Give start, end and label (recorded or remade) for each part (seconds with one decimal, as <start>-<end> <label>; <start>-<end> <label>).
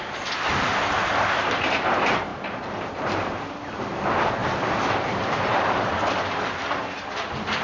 0.0-2.3 recorded; 2.3-3.5 remade; 3.5-4.4 recorded; 4.4-6.1 remade; 6.1-7.6 recorded